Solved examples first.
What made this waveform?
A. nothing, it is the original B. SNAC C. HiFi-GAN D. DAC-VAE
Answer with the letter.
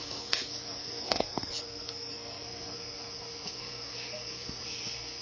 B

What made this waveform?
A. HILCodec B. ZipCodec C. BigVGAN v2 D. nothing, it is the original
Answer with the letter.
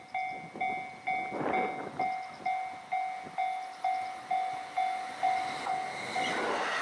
D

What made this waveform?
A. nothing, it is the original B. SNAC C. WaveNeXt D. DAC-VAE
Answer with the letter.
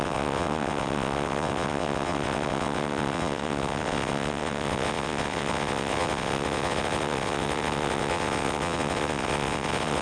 C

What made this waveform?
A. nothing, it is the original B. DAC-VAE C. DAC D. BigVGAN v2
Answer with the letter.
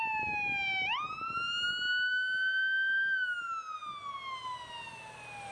A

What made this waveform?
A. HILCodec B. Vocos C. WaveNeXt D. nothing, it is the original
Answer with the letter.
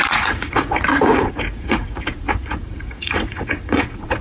B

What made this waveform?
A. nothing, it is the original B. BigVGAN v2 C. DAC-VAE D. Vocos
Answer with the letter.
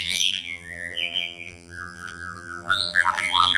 B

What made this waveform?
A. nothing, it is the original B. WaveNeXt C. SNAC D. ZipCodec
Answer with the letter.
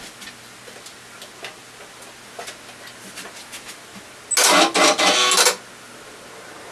A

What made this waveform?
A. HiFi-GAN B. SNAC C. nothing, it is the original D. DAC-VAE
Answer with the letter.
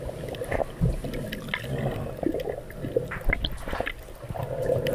C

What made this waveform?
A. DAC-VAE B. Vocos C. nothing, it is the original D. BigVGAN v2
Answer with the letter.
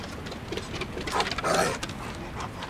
C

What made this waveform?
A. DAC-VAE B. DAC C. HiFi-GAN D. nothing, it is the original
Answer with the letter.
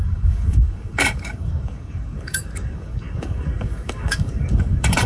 B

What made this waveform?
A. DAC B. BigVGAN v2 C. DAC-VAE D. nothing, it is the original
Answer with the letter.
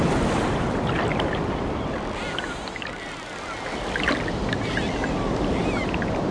D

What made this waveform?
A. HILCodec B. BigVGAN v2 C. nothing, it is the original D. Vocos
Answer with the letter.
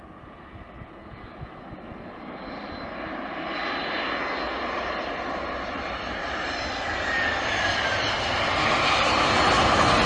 C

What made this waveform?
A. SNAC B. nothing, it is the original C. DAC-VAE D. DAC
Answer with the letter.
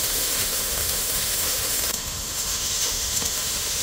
C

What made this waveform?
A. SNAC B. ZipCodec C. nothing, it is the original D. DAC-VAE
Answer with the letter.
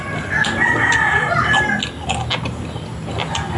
C